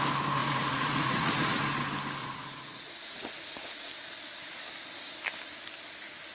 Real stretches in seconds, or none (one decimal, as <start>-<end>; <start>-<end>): 0.0-0.4; 1.6-2.2; 3.9-6.3